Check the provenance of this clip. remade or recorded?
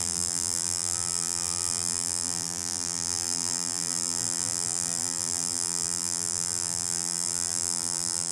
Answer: remade